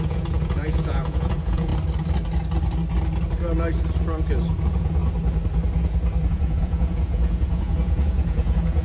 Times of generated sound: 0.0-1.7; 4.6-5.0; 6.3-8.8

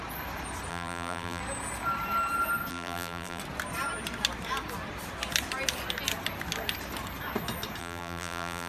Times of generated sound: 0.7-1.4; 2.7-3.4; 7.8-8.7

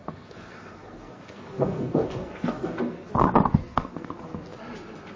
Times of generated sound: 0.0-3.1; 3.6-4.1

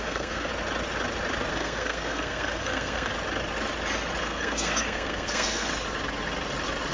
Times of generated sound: 0.0-0.5; 1.5-3.1; 4.2-5.7

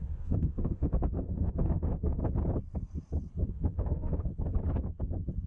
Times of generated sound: 0.0-2.2; 3.5-4.3

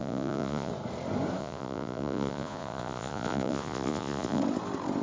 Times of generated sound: 0.0-0.7; 1.4-4.4